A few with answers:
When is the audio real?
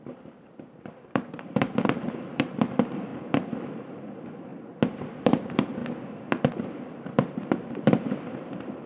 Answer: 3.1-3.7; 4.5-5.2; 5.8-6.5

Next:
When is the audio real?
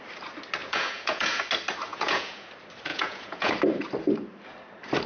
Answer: 0.0-0.6; 1.4-1.9; 2.5-2.9; 3.5-5.1